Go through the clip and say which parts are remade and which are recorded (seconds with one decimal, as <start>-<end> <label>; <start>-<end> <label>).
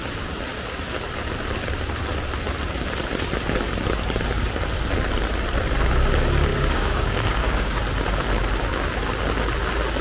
0.0-6.5 recorded; 6.5-7.8 remade; 7.8-10.0 recorded